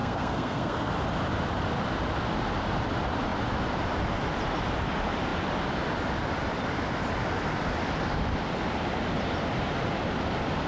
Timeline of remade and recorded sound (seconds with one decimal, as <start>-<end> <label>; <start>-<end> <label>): 0.0-0.9 remade; 0.9-10.7 recorded